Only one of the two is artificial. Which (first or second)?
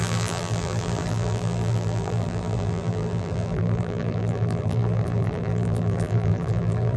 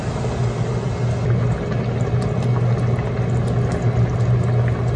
first